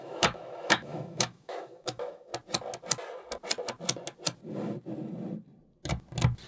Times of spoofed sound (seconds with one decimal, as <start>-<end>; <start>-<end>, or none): 0.0-2.3